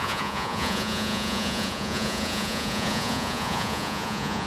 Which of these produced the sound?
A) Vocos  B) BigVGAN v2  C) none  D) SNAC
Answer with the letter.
A